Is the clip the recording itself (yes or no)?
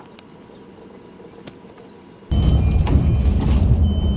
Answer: yes